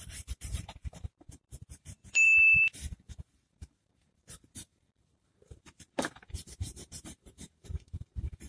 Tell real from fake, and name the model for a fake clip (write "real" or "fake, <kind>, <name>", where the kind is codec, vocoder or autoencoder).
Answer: fake, vocoder, BigVGAN v2